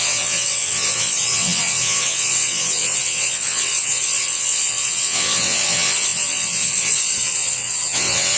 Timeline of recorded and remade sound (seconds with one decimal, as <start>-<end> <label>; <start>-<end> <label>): 0.0-8.4 remade